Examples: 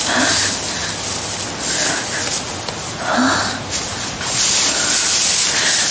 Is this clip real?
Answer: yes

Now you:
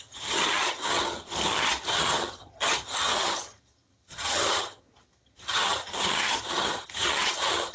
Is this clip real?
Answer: no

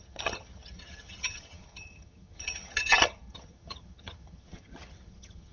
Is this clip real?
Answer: no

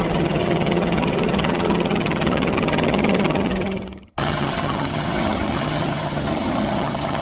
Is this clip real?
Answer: no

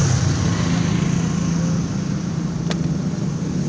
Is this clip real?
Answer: yes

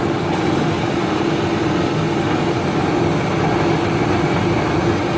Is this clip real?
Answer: yes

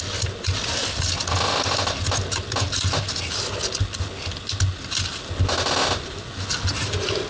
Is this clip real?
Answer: yes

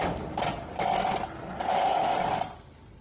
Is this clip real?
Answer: yes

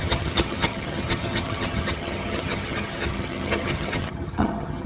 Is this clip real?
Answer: no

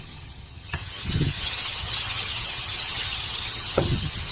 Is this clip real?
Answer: no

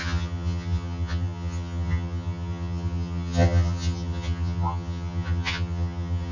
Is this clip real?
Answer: no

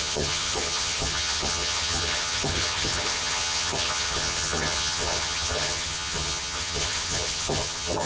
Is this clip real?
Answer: no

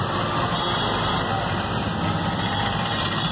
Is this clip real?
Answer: yes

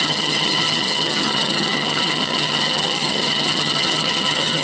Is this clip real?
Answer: no